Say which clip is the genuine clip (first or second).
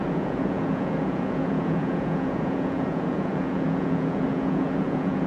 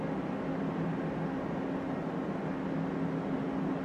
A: second